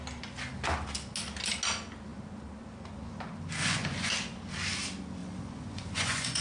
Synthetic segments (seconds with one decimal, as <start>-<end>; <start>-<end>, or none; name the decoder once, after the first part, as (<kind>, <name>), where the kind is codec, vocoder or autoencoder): 3.6-4.1 (vocoder, Vocos); 5.2-6.4